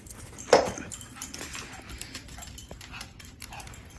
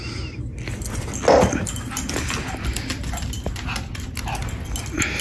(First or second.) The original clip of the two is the second